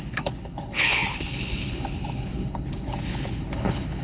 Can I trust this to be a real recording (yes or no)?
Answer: no